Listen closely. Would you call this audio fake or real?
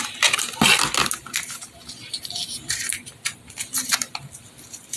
real